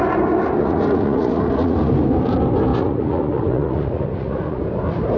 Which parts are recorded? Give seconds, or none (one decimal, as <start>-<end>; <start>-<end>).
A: 0.0-0.6; 1.9-2.7; 4.6-5.2